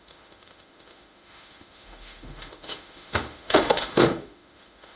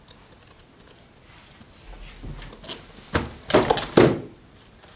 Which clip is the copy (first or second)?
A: first